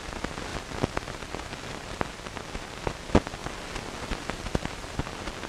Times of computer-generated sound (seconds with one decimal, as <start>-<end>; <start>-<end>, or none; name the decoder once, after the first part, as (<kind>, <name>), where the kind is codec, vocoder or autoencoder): none